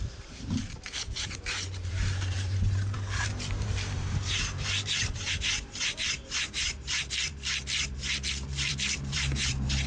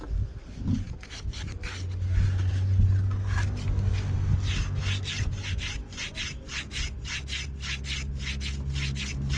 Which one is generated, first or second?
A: first